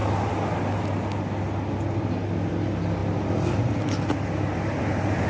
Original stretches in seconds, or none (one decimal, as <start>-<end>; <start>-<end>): 0.0-5.3